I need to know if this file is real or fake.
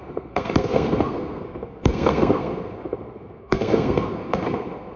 fake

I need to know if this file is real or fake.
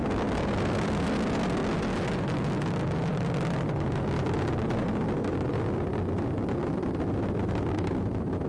real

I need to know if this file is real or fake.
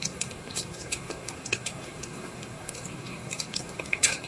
fake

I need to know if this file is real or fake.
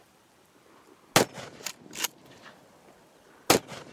real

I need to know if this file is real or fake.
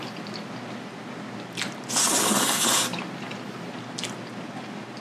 real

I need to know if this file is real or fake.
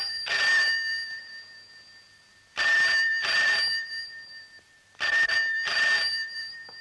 real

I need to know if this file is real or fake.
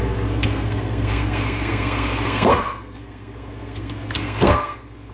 fake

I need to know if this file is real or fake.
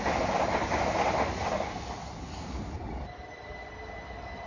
real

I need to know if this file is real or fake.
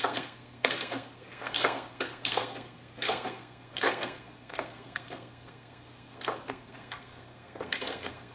fake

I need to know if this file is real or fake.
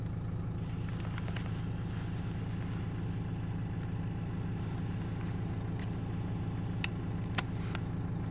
real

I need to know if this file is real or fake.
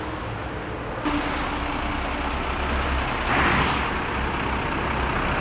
real